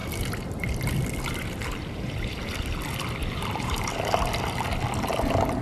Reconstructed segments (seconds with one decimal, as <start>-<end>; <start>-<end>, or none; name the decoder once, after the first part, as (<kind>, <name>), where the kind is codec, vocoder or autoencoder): 3.2-3.9 (vocoder, BigVGAN v2)